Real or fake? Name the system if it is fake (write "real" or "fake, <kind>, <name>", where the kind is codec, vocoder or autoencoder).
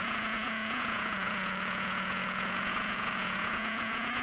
fake, vocoder, Vocos